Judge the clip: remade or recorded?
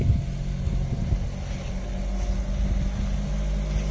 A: recorded